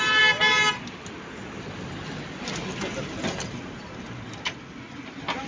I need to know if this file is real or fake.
real